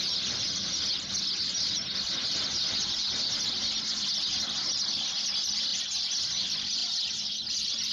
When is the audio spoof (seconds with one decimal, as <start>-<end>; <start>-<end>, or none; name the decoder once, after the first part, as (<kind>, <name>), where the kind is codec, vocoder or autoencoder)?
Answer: none